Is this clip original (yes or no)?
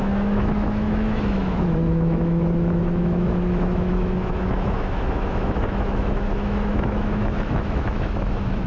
no